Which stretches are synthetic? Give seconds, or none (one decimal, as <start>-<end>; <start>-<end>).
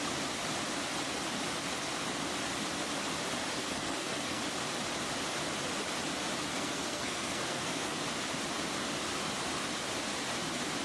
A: 3.6-4.4; 6.5-8.0